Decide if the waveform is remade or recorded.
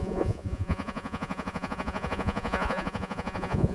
remade